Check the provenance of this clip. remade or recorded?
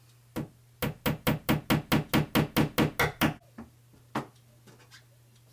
recorded